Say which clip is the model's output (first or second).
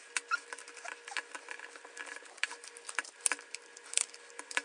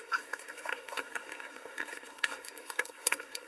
second